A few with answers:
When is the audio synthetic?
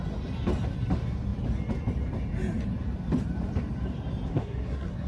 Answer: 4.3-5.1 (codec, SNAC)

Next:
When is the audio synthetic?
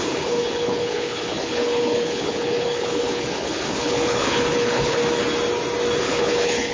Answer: 0.0-5.0 (codec, HILCodec); 6.0-6.7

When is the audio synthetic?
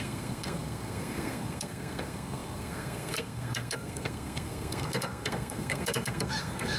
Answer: 0.0-6.8 (codec, SNAC)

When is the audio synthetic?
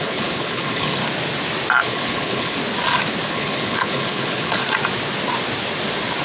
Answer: 0.0-1.0 (codec, HILCodec); 1.8-2.6; 3.3-4.6